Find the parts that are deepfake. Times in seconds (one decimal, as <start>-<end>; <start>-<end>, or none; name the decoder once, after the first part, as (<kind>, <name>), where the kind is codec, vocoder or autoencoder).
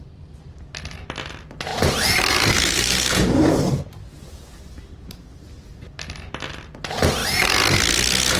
1.7-3.5 (vocoder, BigVGAN v2)